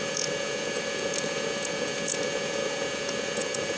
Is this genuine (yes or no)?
no